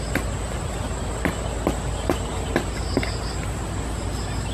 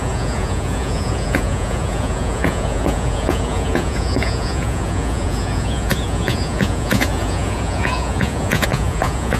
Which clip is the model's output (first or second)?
second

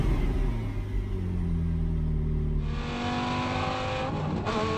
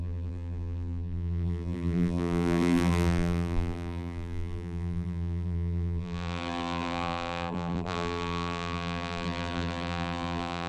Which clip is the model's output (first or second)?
second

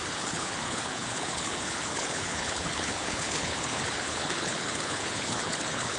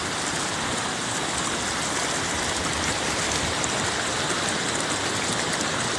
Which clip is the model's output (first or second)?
first